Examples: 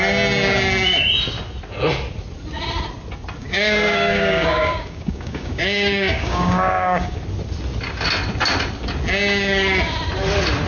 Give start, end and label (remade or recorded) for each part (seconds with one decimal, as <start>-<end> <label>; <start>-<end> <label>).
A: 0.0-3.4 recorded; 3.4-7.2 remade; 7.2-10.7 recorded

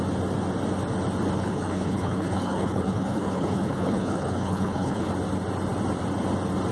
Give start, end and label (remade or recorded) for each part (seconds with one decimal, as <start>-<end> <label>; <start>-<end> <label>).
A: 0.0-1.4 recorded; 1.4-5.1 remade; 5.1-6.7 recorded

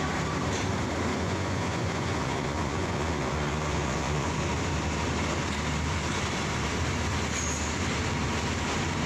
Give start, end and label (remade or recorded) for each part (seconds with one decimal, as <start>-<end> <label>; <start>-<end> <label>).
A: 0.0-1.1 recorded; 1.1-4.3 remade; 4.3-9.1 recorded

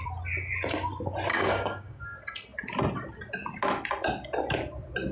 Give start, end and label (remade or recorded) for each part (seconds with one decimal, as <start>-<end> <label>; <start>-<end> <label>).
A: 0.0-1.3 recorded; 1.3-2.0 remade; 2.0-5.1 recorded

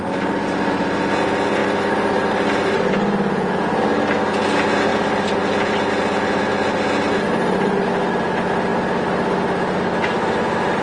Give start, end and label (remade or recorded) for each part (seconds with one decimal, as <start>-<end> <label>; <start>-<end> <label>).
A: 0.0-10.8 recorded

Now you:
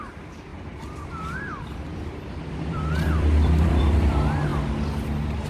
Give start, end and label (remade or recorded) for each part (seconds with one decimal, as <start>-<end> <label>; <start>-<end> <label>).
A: 0.0-0.5 recorded; 0.5-3.8 remade; 3.8-5.5 recorded

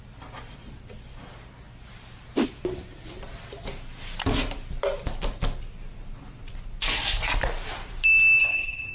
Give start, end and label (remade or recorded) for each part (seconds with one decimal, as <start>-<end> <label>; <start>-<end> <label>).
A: 0.0-8.4 recorded; 8.4-8.9 remade

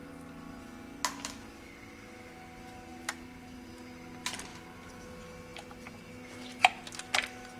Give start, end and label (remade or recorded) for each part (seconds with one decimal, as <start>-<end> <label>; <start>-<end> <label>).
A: 0.0-2.9 recorded; 2.9-3.7 remade; 3.7-4.5 recorded; 4.5-5.1 remade; 5.1-7.6 recorded